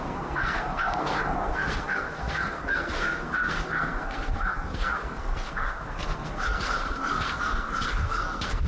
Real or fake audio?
fake